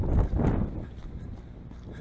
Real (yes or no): yes